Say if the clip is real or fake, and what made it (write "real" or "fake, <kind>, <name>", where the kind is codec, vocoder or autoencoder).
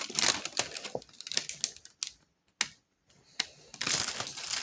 real